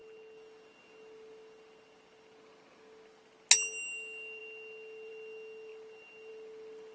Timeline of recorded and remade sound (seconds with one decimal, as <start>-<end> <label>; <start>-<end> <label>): 0.0-6.9 recorded